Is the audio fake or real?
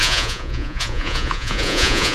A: fake